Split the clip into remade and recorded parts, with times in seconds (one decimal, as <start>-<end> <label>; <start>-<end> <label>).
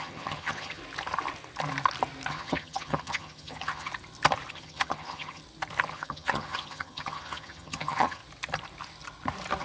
0.0-0.8 remade; 0.8-2.3 recorded; 2.3-3.9 remade; 3.9-4.5 recorded; 4.5-5.4 remade; 5.4-5.9 recorded; 5.9-8.2 remade; 8.2-9.6 recorded